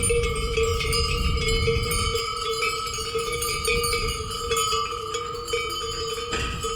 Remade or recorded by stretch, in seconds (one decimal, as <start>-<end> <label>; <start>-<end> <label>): 0.0-0.7 recorded; 0.7-1.3 remade; 1.3-6.8 recorded

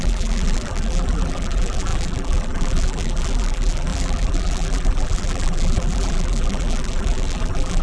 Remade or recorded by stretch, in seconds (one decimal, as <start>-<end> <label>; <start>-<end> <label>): 0.0-7.8 remade

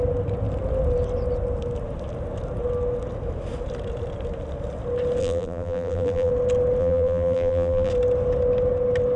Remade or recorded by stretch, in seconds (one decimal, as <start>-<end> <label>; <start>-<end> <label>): 0.0-5.2 recorded; 5.2-6.3 remade; 6.3-6.8 recorded; 6.8-7.9 remade; 7.9-9.2 recorded

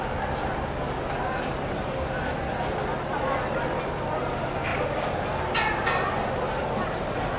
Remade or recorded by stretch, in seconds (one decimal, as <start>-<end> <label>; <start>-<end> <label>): 0.0-7.4 recorded

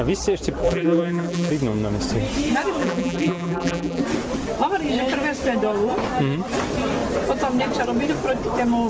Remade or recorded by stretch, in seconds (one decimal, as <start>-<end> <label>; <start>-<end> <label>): 0.0-0.6 recorded; 0.6-1.5 remade; 1.5-2.8 recorded; 2.8-4.0 remade; 4.0-8.9 recorded

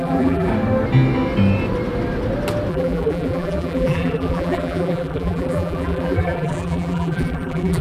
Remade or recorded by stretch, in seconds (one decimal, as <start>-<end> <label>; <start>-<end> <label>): 0.0-0.5 remade; 0.5-2.7 recorded; 2.7-7.8 remade

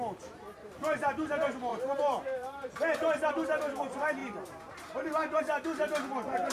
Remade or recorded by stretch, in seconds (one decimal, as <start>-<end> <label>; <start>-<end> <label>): 0.0-1.7 recorded; 1.7-3.3 remade; 3.3-6.5 recorded